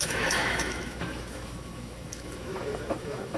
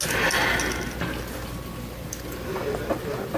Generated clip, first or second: first